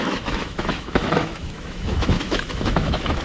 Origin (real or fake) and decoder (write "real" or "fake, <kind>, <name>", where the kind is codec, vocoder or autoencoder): fake, autoencoder, DAC-VAE